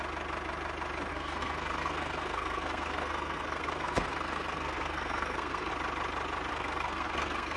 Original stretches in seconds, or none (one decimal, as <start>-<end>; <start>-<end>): 0.0-1.1; 5.7-6.5